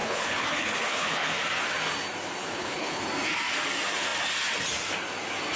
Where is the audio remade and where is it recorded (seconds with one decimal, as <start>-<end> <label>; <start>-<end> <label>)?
0.0-1.4 remade; 1.4-2.4 recorded; 2.4-3.0 remade; 3.0-5.6 recorded